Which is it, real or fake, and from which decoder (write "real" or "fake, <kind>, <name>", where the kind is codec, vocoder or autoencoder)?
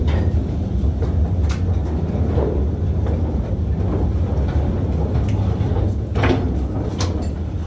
real